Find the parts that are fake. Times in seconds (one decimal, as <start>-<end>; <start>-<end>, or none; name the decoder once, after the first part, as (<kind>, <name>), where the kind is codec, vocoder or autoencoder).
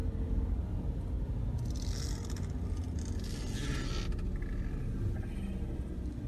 none